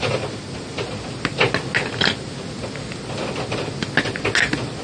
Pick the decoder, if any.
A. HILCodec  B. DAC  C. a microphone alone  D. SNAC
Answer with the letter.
C